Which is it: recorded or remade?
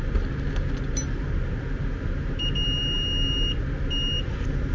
recorded